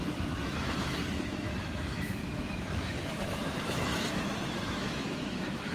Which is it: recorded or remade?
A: remade